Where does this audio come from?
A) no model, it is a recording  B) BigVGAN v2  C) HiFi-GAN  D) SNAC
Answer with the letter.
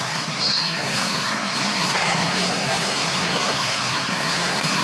D